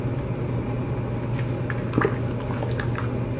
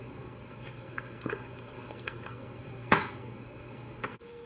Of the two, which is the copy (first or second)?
second